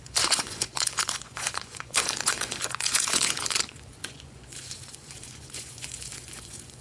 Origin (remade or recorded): remade